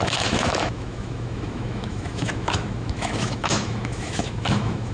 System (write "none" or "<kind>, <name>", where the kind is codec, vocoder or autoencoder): autoencoder, DAC-VAE